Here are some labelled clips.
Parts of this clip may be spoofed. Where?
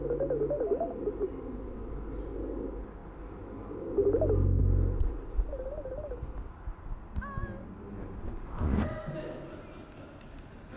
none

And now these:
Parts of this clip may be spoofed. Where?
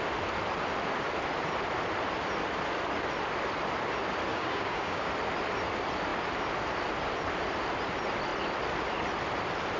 4.3-5.1 (codec, DAC)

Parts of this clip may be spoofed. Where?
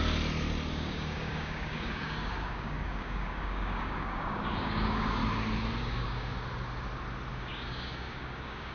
0.7-5.2 (codec, DAC); 5.8-6.3; 7.3-8.7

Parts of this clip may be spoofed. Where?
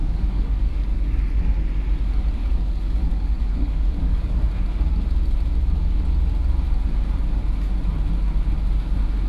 0.0-1.3 (codec, DAC); 2.4-4.4